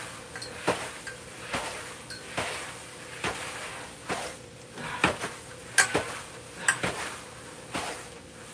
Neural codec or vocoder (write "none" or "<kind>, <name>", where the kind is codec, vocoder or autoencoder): none